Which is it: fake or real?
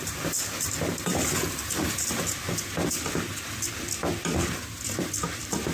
fake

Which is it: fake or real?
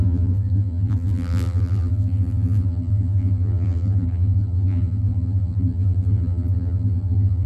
fake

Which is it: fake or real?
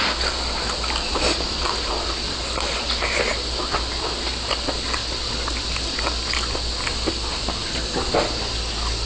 real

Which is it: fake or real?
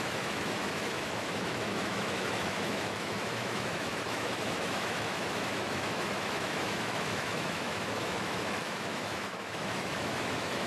fake